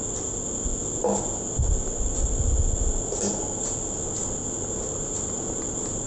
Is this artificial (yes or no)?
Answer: no